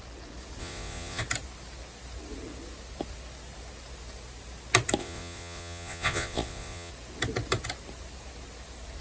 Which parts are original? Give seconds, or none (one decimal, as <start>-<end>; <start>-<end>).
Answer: 0.0-0.6; 1.2-5.0; 6.9-9.0